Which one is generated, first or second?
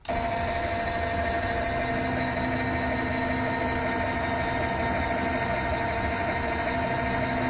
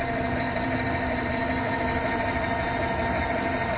second